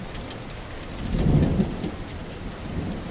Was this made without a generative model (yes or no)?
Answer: yes